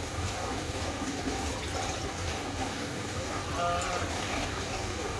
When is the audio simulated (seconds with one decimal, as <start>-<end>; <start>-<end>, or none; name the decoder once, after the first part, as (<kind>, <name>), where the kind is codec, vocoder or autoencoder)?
0.0-1.5 (codec, DAC); 2.1-3.4; 4.1-5.2